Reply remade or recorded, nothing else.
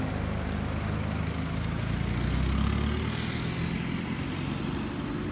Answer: recorded